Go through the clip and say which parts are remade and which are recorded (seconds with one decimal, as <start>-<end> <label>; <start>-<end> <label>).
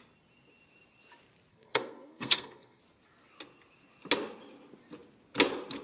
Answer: 0.0-1.5 recorded; 1.5-2.8 remade; 2.8-5.8 recorded